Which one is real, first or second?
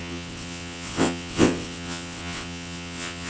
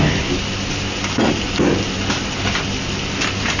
second